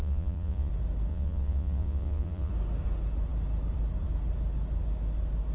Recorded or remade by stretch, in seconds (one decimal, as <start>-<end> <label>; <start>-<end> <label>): 0.0-0.7 remade; 0.7-1.1 recorded; 1.1-2.5 remade; 2.5-5.5 recorded